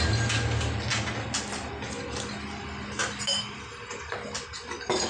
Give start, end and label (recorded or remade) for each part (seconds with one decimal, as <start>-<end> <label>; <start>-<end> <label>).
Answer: 0.0-5.1 recorded

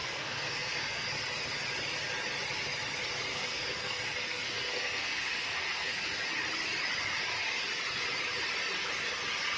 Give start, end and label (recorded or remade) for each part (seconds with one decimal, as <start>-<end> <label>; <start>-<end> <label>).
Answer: 0.0-1.1 remade; 1.1-3.3 recorded; 3.3-6.0 remade; 6.0-9.6 recorded

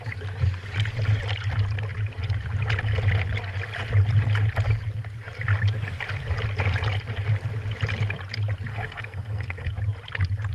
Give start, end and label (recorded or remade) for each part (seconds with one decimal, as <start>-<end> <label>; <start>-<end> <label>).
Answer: 0.0-8.7 recorded; 8.7-9.7 remade; 9.7-10.5 recorded

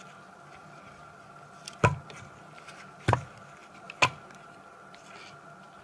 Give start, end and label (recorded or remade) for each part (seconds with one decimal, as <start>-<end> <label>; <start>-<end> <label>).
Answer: 0.0-5.8 recorded